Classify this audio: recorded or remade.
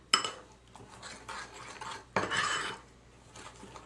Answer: recorded